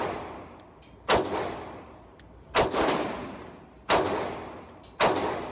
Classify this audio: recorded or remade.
recorded